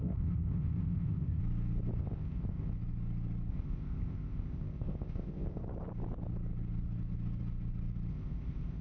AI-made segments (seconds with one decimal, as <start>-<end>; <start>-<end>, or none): 0.0-1.4; 2.0-2.7; 3.5-5.6; 8.1-8.8

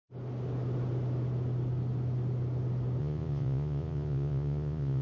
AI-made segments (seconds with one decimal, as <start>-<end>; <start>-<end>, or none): 3.0-5.0

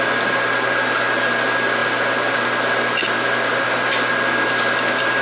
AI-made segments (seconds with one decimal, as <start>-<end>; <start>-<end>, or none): none

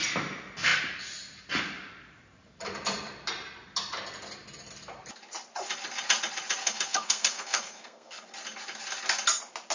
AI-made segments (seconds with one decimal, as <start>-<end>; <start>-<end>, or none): 6.6-8.2